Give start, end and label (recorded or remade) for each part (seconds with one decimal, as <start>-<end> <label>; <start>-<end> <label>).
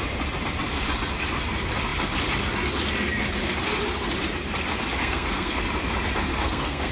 0.0-5.0 recorded; 5.0-5.6 remade; 5.6-6.3 recorded; 6.3-6.9 remade